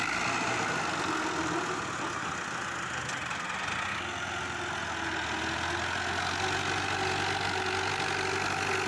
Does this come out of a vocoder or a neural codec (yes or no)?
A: no